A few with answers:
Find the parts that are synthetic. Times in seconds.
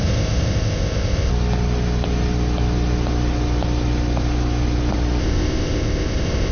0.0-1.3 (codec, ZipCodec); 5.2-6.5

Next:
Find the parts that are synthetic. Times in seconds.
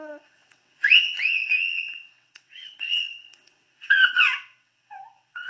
0.0-5.5 (vocoder, WaveNeXt)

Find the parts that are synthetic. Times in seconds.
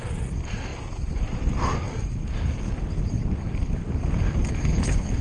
4.6-5.2 (codec, HILCodec)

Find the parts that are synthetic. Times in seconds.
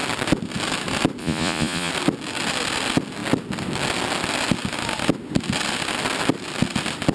1.2-1.9 (vocoder, Vocos)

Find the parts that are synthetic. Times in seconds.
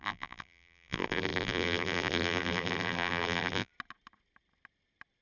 0.0-3.7 (vocoder, BigVGAN v2)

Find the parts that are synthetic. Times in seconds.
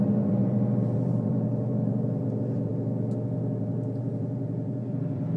0.0-5.4 (vocoder, BigVGAN v2)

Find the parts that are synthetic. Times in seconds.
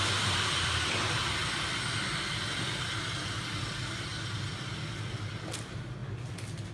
none